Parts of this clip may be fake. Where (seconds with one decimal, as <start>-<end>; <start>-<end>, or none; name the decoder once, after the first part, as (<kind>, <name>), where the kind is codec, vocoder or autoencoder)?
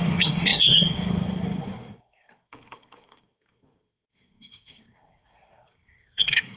0.0-6.6 (codec, SNAC)